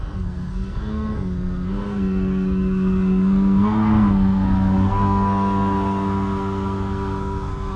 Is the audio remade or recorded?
remade